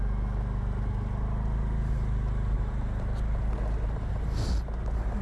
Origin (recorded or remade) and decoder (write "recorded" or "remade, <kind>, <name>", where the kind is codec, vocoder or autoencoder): recorded